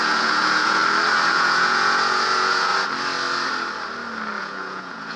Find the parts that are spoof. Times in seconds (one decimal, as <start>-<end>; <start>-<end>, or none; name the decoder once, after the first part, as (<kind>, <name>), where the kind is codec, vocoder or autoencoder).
0.0-0.8 (vocoder, Vocos); 1.3-2.7; 4.4-5.2

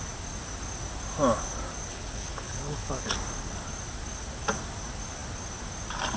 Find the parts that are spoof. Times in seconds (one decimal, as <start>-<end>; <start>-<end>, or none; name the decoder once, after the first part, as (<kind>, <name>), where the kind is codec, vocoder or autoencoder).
1.9-3.1 (codec, HILCodec)

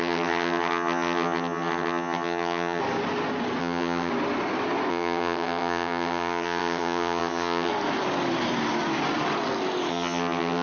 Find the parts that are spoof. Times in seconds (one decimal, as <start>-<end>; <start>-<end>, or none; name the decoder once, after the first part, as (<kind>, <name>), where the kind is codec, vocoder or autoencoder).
0.0-2.8 (vocoder, HiFi-GAN); 3.6-4.1; 4.9-7.7; 9.9-10.6

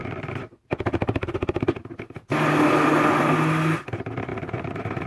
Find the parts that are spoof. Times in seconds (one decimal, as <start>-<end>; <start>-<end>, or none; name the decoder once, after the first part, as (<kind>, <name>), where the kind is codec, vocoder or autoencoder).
4.3-5.1 (vocoder, BigVGAN v2)

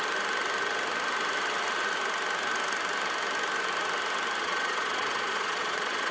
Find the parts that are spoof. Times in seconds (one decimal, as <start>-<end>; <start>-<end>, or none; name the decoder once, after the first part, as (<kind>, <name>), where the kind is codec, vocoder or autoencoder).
4.4-6.1 (vocoder, Vocos)

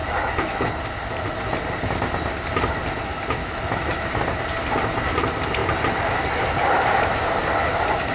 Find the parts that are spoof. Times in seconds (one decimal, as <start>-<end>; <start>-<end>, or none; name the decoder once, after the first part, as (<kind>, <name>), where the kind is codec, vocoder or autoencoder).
0.0-0.7 (autoencoder, DAC-VAE); 3.4-4.1